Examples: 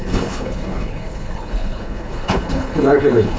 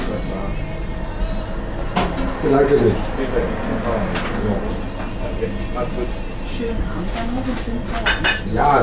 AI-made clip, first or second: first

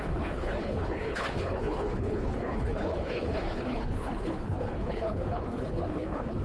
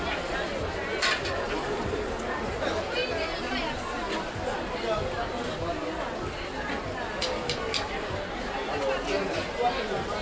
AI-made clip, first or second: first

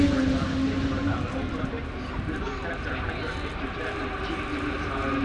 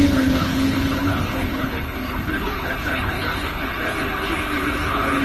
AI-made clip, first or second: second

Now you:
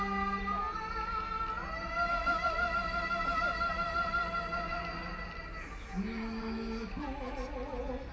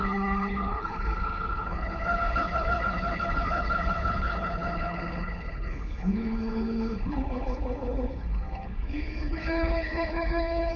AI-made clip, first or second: second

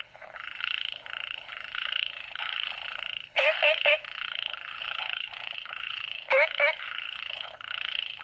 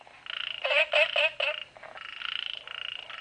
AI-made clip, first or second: first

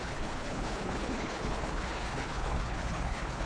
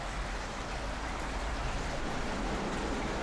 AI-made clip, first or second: first